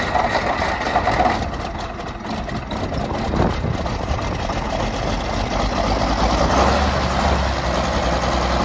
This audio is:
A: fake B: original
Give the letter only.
B